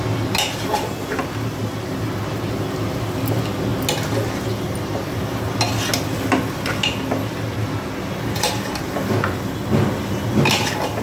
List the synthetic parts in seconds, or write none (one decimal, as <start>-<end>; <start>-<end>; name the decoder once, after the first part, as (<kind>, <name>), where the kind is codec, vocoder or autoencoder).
none